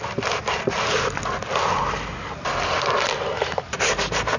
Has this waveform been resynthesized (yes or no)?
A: no